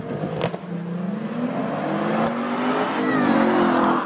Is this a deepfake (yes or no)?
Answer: no